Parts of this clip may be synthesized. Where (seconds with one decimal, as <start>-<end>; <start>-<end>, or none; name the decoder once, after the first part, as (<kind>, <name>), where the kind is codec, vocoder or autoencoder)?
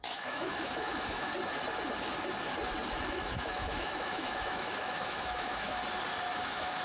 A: 0.0-1.3 (autoencoder, DAC-VAE); 3.1-5.8; 6.3-6.8